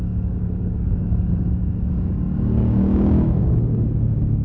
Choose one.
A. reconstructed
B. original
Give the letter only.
A